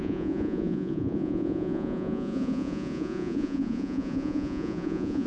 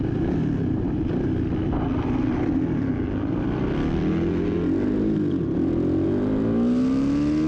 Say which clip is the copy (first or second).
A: first